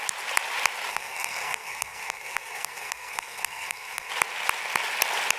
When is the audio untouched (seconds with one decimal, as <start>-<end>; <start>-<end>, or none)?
0.0-0.9; 4.1-5.4